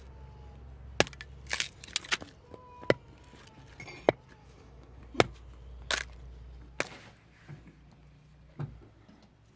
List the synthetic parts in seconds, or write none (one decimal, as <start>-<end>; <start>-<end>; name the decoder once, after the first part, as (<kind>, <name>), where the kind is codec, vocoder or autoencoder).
4.4-5.0 (codec, DAC)